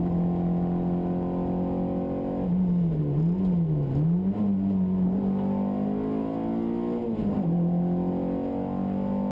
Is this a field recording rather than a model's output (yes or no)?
yes